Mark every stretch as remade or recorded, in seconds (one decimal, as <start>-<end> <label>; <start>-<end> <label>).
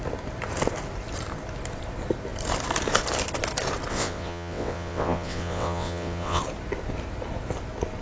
0.0-3.9 recorded; 3.9-6.4 remade; 6.4-8.0 recorded